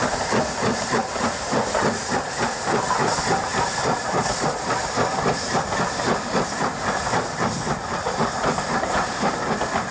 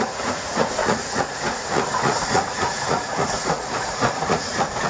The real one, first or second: first